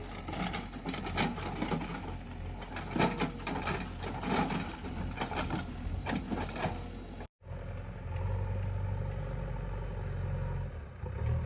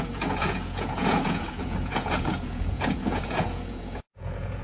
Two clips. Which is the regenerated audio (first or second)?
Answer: second